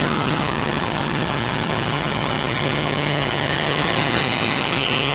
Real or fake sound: fake